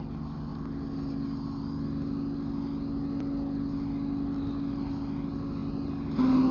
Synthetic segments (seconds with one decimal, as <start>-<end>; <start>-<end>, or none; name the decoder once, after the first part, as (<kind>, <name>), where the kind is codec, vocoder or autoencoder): none